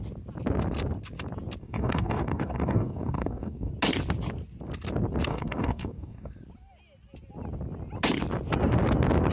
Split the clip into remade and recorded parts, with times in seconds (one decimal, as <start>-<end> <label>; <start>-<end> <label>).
0.0-1.6 recorded; 1.6-3.7 remade; 3.7-5.3 recorded; 5.3-6.3 remade; 6.3-9.3 recorded